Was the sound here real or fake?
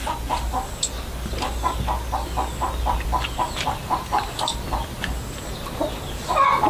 real